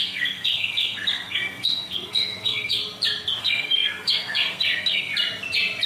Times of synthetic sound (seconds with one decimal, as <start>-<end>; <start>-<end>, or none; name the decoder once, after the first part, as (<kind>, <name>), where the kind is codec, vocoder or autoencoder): 0.0-2.8 (codec, SNAC); 3.4-5.1